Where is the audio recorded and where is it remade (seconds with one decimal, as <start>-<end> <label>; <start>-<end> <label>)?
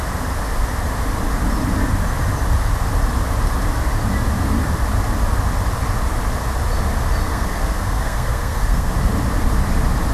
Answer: 0.0-7.3 recorded; 7.3-8.9 remade; 8.9-10.1 recorded